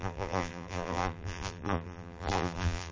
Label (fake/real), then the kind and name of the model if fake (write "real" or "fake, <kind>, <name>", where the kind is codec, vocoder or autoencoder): fake, vocoder, BigVGAN v2